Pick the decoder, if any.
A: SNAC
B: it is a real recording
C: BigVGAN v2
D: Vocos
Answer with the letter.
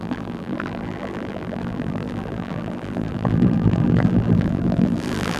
C